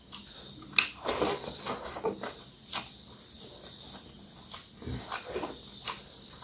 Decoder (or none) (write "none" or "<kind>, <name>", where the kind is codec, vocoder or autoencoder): none